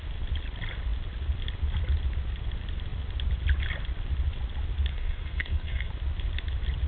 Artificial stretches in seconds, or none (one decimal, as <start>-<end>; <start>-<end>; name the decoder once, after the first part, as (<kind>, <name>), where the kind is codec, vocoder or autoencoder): 4.9-5.9 (codec, SNAC)